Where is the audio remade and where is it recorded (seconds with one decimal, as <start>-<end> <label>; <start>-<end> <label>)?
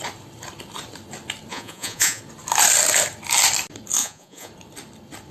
0.0-1.5 recorded; 1.5-2.2 remade; 2.2-4.0 recorded; 4.0-4.5 remade; 4.5-5.3 recorded